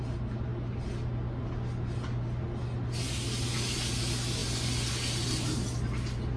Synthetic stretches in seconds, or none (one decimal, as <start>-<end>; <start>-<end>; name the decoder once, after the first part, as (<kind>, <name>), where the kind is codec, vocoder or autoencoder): none